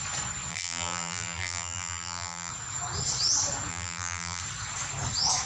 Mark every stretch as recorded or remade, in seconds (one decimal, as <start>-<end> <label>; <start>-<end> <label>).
0.0-0.5 recorded; 0.5-2.5 remade; 2.5-3.7 recorded; 3.7-4.4 remade; 4.4-5.5 recorded